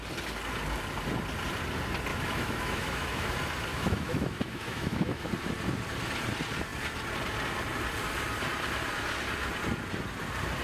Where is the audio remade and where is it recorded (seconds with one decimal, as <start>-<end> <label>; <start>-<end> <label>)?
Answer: 0.0-2.1 recorded; 2.1-3.3 remade; 3.3-3.7 recorded; 3.7-5.3 remade; 5.3-10.6 recorded